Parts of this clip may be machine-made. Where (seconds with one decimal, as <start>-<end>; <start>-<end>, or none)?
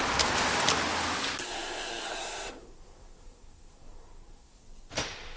1.4-4.6